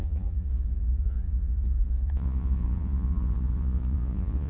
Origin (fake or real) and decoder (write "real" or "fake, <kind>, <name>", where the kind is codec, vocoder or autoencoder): fake, vocoder, Vocos